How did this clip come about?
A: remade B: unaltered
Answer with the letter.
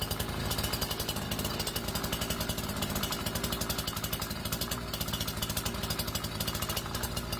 B